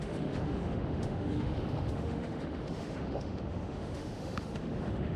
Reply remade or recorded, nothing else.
remade